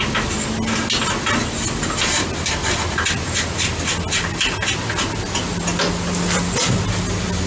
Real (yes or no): yes